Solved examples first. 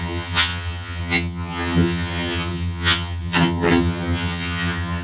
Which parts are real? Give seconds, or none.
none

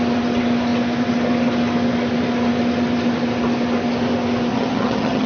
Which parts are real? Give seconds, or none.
0.0-4.5

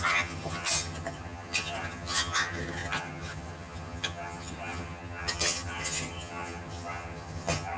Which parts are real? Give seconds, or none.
none

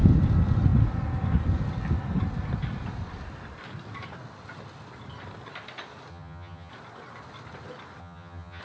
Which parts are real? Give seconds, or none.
0.0-6.1; 6.7-8.0

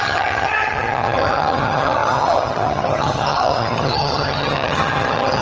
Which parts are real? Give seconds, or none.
none

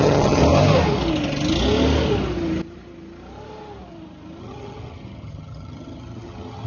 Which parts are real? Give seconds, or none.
0.4-4.4

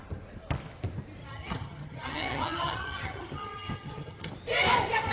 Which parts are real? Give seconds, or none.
0.0-1.2; 4.3-5.1

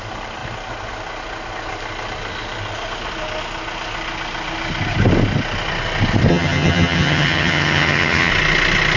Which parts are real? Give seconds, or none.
0.0-6.3; 8.3-9.0